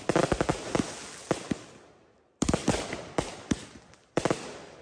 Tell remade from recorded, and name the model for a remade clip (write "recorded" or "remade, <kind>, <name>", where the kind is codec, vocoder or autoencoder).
recorded